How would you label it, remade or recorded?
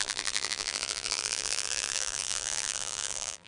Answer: remade